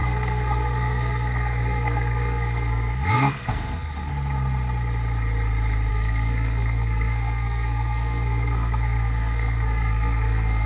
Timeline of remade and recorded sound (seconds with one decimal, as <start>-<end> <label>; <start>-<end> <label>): 0.0-4.1 remade; 4.1-5.9 recorded; 5.9-10.7 remade